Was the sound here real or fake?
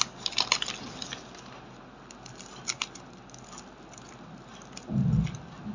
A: real